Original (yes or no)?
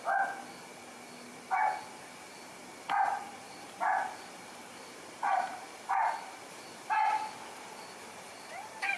yes